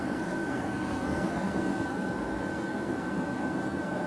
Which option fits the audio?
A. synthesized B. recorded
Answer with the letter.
A